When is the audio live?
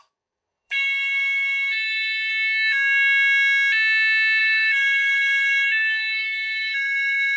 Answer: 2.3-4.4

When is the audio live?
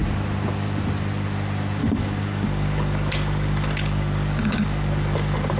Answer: 0.0-1.8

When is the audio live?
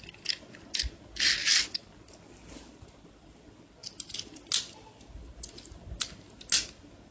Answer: 0.0-7.1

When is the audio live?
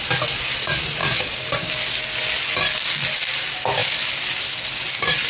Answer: 0.0-1.0; 1.8-5.3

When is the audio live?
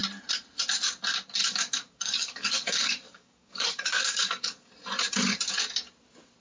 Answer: 0.0-1.4; 4.7-6.4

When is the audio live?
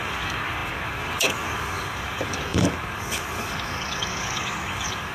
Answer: none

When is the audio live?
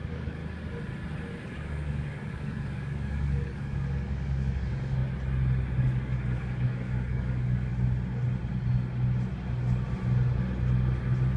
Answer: 0.4-1.5; 5.0-5.8; 7.7-11.4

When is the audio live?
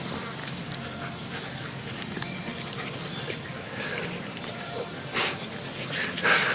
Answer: 0.0-0.4; 2.0-6.5